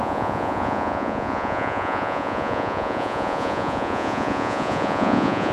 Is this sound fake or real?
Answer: fake